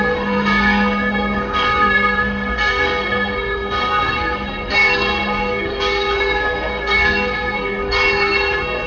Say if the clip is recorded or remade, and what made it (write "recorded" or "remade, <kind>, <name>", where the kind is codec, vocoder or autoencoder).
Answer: remade, codec, SNAC